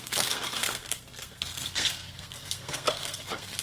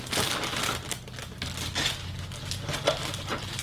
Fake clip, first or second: first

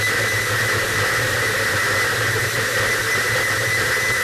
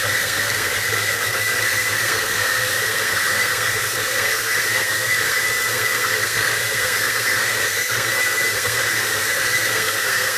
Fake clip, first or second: second